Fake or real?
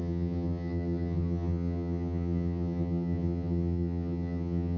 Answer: fake